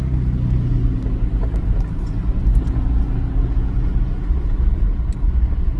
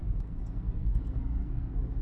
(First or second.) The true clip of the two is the first